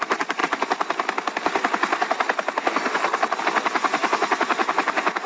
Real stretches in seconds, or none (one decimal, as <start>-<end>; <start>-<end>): 0.0-5.3